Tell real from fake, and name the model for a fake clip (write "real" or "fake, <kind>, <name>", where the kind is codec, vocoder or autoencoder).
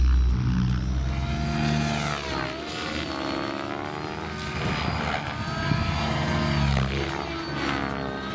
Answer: real